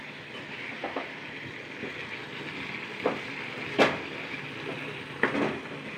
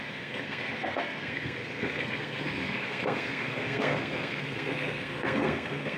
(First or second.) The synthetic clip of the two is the second